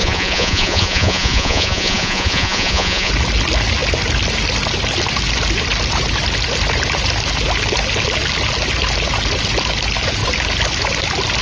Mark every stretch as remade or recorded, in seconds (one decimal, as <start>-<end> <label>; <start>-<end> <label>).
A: 0.0-3.1 remade; 3.1-11.4 recorded